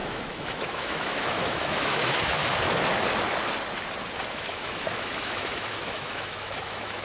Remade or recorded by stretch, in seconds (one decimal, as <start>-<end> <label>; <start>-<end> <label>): 0.0-2.4 remade; 2.4-4.3 recorded; 4.3-7.0 remade

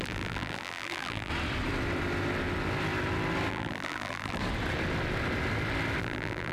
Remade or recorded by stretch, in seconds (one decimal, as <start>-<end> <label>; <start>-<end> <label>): 0.0-1.3 remade; 1.3-3.5 recorded; 3.5-4.4 remade; 4.4-6.0 recorded; 6.0-6.5 remade

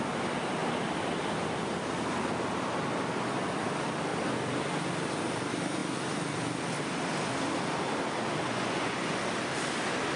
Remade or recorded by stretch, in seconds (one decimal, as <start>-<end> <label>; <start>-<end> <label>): 0.0-8.5 recorded; 8.5-9.2 remade; 9.2-10.2 recorded

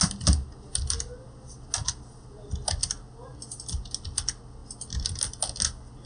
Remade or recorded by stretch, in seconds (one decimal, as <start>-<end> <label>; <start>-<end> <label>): 0.0-6.1 recorded

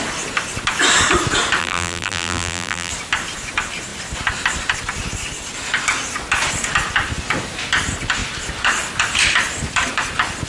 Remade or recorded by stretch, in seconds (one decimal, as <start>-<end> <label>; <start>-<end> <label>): 0.0-1.6 recorded; 1.6-2.9 remade; 2.9-10.5 recorded

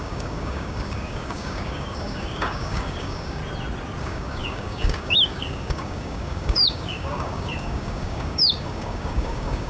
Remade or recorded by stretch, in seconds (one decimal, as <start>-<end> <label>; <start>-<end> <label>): 0.0-3.4 remade; 3.4-4.0 recorded; 4.0-9.7 remade